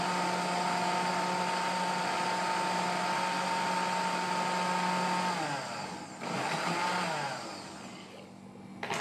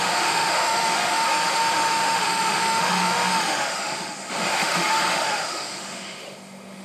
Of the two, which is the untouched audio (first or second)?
first